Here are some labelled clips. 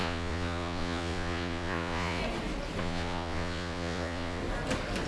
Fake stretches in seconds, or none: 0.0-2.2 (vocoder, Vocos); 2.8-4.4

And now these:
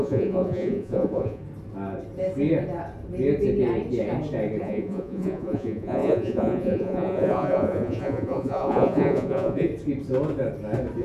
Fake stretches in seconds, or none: 0.0-1.4 (vocoder, Vocos); 4.6-9.7

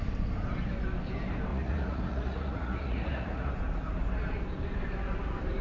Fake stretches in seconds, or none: 1.5-3.5 (vocoder, Vocos)